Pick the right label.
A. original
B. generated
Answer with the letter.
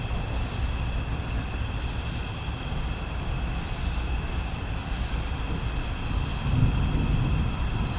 A